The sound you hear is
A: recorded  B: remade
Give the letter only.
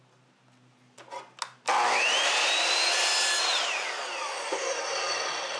A